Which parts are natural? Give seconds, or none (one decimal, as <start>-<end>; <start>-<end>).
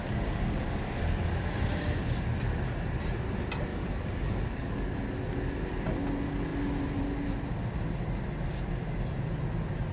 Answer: 1.2-3.7; 5.0-9.9